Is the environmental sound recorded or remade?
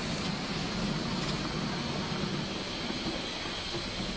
recorded